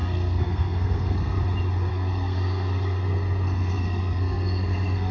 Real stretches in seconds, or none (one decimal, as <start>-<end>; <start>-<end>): 1.4-1.9